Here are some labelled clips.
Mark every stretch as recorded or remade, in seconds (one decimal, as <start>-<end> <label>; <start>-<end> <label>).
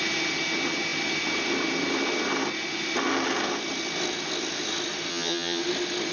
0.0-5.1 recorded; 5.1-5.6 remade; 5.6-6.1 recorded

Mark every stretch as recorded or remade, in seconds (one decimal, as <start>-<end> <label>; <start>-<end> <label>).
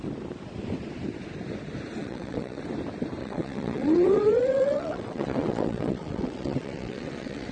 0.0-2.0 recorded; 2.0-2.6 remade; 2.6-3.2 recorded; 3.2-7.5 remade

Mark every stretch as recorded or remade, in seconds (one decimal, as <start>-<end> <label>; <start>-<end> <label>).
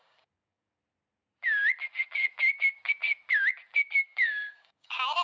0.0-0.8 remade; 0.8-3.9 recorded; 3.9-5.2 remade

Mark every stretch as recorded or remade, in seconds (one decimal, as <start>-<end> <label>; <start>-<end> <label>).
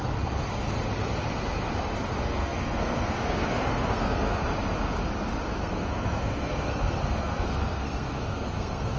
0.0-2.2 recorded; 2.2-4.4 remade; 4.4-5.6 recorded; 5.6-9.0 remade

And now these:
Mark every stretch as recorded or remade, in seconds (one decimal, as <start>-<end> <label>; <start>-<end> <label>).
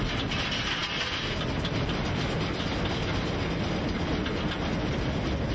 0.0-5.5 recorded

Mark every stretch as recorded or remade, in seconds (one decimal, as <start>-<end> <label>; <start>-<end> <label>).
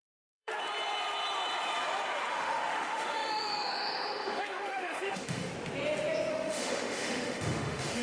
0.0-0.5 remade; 0.5-2.3 recorded; 2.3-5.5 remade; 5.5-6.3 recorded; 6.3-8.0 remade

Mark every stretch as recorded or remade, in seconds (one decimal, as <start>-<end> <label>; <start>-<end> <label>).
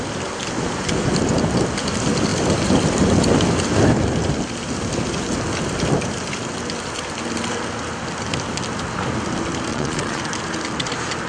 0.0-9.7 recorded; 9.7-10.2 remade; 10.2-11.3 recorded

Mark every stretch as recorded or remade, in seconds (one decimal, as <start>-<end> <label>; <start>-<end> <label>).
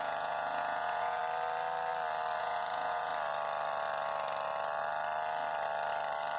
0.0-1.2 remade; 1.2-2.4 recorded; 2.4-3.1 remade; 3.1-6.4 recorded